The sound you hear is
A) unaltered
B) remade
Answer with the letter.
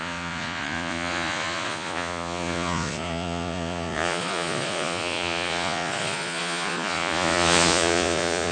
B